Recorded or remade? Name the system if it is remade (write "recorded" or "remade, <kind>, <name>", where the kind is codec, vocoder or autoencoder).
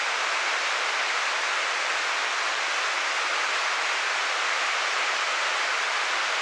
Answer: recorded